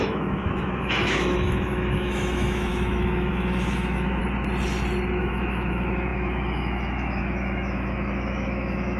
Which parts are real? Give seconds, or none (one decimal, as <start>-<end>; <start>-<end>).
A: 4.2-5.2